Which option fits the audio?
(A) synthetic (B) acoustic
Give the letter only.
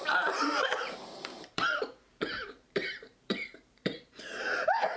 A